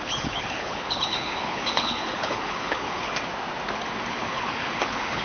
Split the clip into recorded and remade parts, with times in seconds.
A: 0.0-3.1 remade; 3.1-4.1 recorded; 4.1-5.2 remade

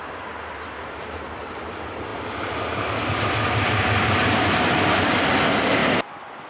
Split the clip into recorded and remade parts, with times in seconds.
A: 0.0-6.5 recorded

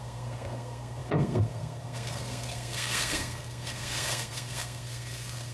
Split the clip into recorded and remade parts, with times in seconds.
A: 0.0-5.5 remade

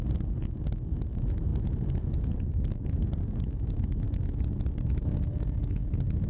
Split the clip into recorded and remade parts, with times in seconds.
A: 0.0-6.3 recorded